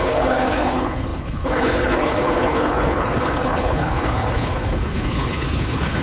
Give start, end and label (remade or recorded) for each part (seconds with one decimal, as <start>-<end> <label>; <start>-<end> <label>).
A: 0.0-6.0 remade